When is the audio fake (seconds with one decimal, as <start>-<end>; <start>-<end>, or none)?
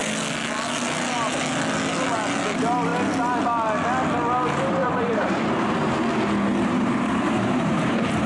4.8-6.0; 6.5-8.3